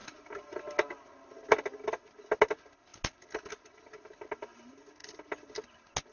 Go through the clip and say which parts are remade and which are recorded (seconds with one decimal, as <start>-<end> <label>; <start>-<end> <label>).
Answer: 0.0-0.6 remade; 0.6-6.1 recorded